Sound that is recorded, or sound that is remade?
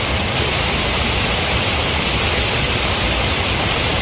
recorded